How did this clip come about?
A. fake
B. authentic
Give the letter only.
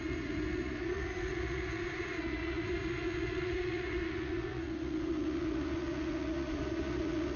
A